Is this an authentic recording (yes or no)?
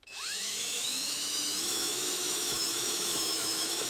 no